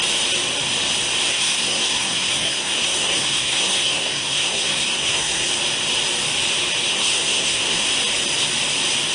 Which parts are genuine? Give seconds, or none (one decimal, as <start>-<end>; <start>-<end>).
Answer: 0.0-1.3; 5.5-6.9; 7.8-9.1